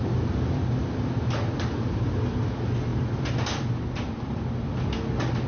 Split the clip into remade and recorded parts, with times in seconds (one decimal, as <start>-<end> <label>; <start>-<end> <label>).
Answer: 0.0-5.5 recorded